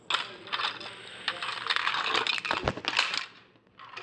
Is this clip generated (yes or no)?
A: no